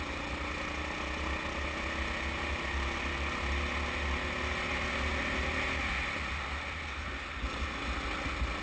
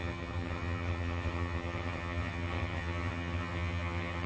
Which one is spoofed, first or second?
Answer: second